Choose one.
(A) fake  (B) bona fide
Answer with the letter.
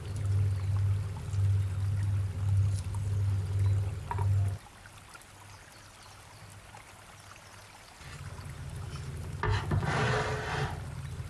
B